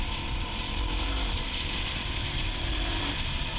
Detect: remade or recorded remade